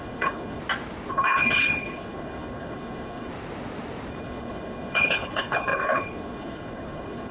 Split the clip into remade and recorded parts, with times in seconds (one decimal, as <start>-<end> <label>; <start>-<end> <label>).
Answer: 0.0-0.6 remade; 0.6-1.1 recorded; 1.1-3.3 remade; 3.3-4.1 recorded; 4.1-7.3 remade